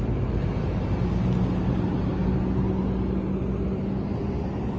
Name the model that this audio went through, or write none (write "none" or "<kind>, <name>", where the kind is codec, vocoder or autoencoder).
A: none